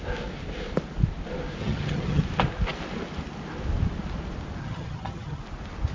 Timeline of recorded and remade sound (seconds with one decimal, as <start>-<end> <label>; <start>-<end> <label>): 0.0-1.6 recorded; 1.6-2.2 remade; 2.2-4.6 recorded; 4.6-5.4 remade; 5.4-5.9 recorded